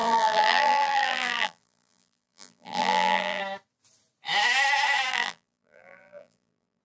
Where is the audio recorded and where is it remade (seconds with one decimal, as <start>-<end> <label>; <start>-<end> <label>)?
0.0-3.4 remade; 3.4-5.1 recorded; 5.1-6.8 remade